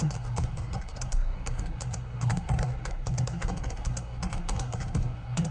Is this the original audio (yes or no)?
no